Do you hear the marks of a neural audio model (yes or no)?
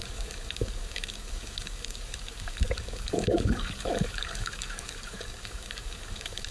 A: yes